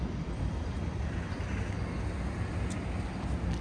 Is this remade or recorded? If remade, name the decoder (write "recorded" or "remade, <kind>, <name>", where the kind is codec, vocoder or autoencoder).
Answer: recorded